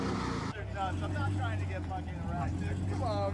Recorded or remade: recorded